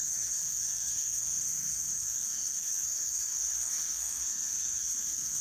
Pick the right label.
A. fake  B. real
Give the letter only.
A